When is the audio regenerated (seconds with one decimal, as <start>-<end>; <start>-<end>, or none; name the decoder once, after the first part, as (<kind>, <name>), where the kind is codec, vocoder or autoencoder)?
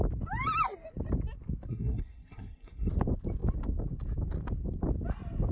1.7-2.9 (codec, SNAC)